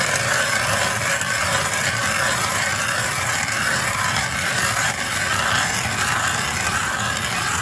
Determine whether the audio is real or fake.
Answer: real